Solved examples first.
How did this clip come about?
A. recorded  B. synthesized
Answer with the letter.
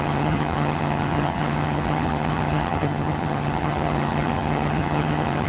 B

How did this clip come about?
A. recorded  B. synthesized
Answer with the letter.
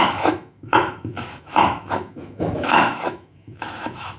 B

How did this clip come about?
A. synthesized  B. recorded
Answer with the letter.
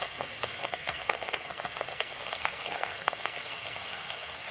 A